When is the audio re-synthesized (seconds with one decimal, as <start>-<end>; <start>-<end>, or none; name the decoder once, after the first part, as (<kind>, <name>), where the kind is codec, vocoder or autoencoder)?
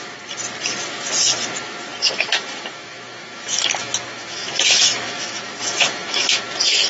2.3-6.4 (autoencoder, DAC-VAE)